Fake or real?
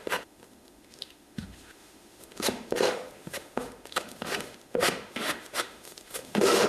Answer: fake